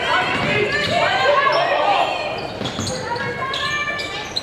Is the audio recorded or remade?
recorded